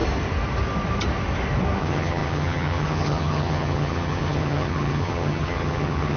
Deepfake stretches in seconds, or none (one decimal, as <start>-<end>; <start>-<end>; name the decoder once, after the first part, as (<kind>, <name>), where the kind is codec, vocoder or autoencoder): 1.8-6.2 (vocoder, HiFi-GAN)